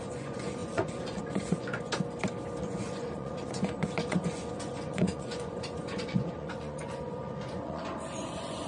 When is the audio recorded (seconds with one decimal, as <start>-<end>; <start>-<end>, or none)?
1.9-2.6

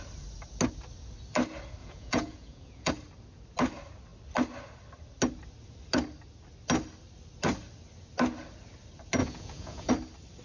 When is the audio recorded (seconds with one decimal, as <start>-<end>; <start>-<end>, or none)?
0.0-1.8; 2.9-9.2; 9.9-10.4

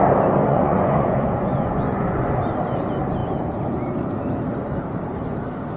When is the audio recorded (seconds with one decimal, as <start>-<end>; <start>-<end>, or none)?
0.0-0.4; 2.3-5.8

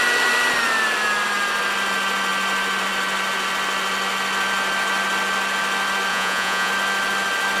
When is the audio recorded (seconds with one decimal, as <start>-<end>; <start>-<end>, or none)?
0.0-6.1; 6.7-7.6

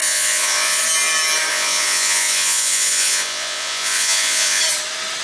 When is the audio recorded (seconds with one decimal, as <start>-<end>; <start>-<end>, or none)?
0.8-1.5; 4.6-5.2

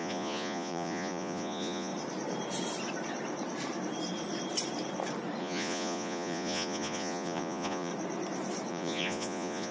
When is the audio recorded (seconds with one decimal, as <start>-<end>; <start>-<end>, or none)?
1.9-5.4; 7.9-8.7